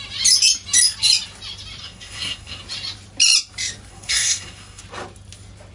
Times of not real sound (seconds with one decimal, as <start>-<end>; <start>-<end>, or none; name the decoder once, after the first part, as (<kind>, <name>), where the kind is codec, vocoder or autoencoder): 1.8-2.6 (codec, SNAC); 3.9-4.8